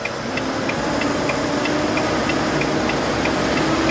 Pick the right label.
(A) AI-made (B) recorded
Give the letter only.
B